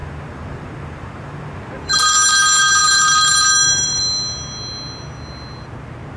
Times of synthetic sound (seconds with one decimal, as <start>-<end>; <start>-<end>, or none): 0.0-2.0; 2.8-4.0